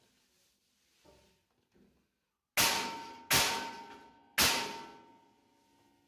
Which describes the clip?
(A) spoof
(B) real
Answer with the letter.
B